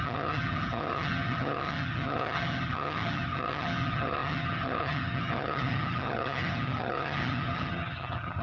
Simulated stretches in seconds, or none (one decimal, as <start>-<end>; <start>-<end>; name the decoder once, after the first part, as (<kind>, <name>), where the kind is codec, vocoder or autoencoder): 0.0-8.4 (vocoder, HiFi-GAN)